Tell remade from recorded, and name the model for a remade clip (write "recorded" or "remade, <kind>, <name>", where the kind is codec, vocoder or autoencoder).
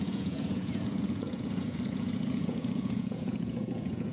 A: remade, vocoder, Vocos